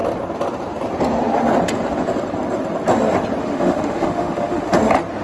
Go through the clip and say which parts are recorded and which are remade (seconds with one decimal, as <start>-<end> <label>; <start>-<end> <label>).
0.0-3.4 recorded; 3.4-4.7 remade; 4.7-5.2 recorded